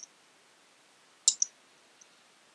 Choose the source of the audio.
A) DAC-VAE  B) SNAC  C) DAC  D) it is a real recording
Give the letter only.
D